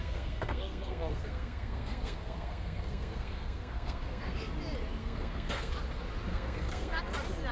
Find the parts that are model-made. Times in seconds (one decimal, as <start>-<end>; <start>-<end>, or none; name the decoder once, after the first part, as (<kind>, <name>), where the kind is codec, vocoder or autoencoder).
0.0-4.5 (codec, SNAC); 5.0-5.7; 6.3-7.0